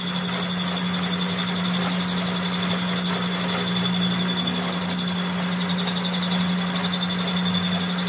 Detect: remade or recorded recorded